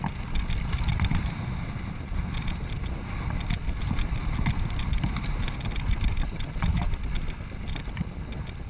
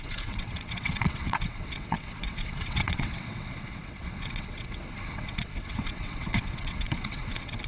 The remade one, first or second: second